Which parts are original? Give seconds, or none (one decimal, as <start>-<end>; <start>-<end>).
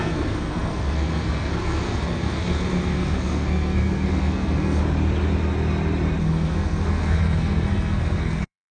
4.8-6.2